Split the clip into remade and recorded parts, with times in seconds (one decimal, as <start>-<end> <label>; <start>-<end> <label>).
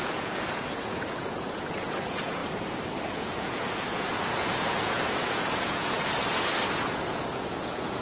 0.0-2.4 remade; 2.4-3.1 recorded; 3.1-6.0 remade; 6.0-6.7 recorded; 6.7-8.0 remade